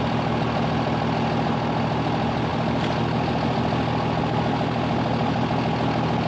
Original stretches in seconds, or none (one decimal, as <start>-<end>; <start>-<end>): 0.0-6.3